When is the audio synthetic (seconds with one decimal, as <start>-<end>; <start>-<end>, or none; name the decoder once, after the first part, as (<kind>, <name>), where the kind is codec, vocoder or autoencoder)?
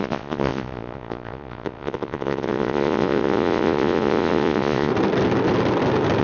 0.0-4.9 (vocoder, Vocos)